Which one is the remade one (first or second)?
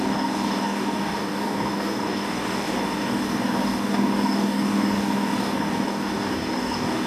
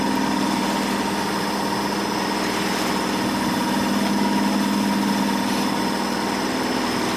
first